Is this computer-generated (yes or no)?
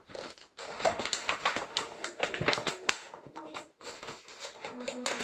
yes